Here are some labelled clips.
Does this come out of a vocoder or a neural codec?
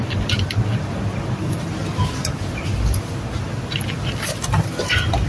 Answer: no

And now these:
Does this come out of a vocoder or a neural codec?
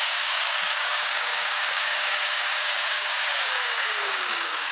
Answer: yes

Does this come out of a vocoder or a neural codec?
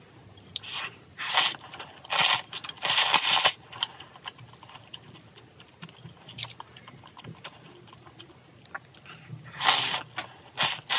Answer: no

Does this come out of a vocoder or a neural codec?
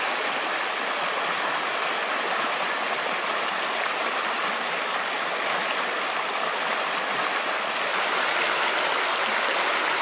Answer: no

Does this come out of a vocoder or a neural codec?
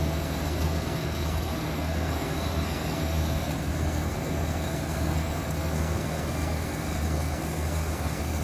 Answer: yes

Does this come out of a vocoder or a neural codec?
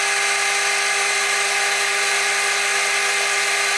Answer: no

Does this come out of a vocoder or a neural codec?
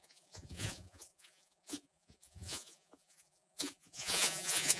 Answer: yes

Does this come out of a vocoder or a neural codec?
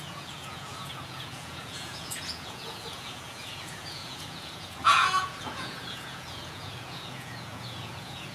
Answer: yes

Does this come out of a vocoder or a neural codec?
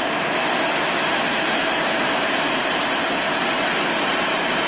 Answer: no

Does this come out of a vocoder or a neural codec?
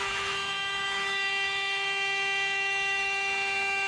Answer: yes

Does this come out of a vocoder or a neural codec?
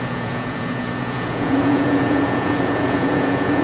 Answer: yes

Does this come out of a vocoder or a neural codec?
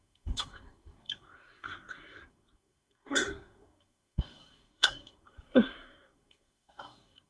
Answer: yes